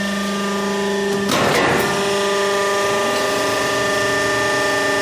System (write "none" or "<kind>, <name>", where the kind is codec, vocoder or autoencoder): none